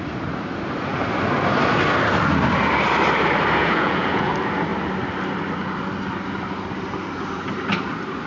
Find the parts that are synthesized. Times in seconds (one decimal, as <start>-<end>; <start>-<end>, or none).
3.6-4.3